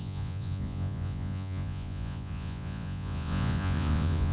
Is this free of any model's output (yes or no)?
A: no